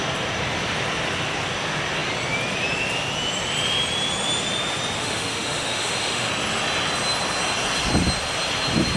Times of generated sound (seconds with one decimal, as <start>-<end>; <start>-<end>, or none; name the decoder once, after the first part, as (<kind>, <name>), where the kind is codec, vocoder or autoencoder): 5.0-6.3 (autoencoder, DAC-VAE)